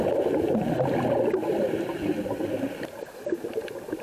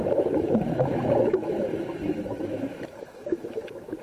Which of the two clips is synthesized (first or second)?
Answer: second